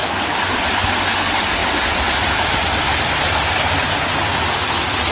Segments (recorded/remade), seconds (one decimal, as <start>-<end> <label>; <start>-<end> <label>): 0.0-1.6 recorded; 1.6-5.1 remade